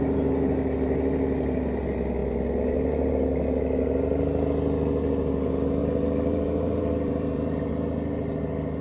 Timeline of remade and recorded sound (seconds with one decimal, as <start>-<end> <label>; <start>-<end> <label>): 0.0-5.8 recorded; 5.8-7.7 remade; 7.7-8.8 recorded